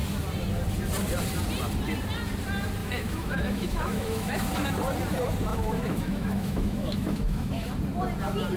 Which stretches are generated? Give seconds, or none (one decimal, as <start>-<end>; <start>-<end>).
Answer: 2.8-4.5; 5.5-7.7